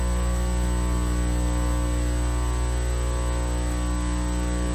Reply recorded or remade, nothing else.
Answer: recorded